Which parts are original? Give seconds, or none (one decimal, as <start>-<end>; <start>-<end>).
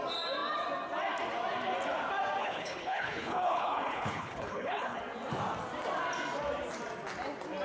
0.0-2.4; 5.0-7.6